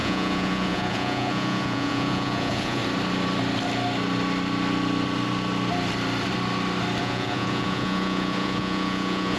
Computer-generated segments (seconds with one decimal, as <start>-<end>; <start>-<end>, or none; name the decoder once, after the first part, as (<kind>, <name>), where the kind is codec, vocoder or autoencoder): 0.0-2.8 (vocoder, Vocos); 7.0-9.4